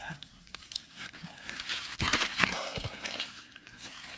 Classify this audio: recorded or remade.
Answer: remade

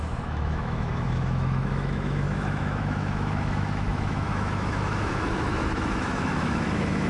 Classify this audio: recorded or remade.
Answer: remade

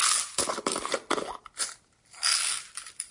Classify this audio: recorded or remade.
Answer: recorded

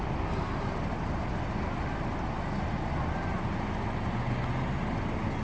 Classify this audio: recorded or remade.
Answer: recorded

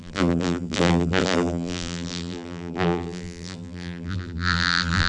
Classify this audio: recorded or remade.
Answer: remade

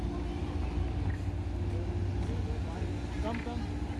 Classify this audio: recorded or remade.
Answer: recorded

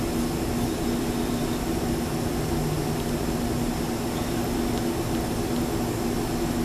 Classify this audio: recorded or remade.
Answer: recorded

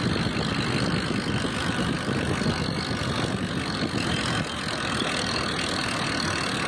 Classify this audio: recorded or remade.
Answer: recorded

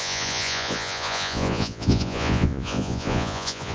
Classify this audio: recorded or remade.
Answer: remade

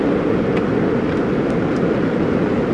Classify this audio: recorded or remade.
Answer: recorded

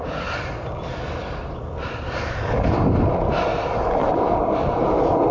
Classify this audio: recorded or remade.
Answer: recorded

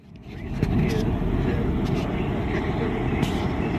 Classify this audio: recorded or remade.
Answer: recorded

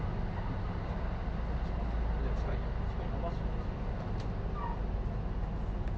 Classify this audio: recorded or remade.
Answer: recorded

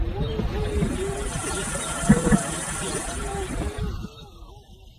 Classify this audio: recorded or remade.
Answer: recorded